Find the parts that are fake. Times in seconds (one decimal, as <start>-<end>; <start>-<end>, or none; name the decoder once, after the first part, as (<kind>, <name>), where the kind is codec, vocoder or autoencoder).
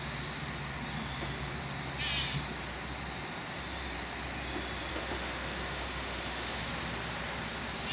4.9-6.7 (autoencoder, DAC-VAE)